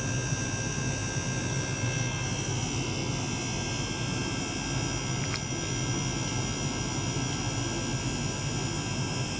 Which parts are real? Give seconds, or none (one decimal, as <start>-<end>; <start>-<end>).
0.0-9.4